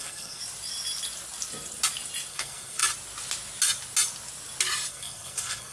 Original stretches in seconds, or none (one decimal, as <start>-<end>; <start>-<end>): 0.4-2.3; 2.8-4.9